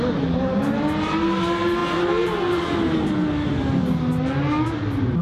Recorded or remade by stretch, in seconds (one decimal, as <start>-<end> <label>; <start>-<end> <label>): 0.0-5.2 recorded